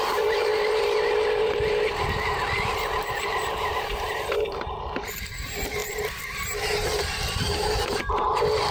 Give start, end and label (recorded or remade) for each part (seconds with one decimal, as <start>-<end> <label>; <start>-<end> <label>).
0.0-8.7 remade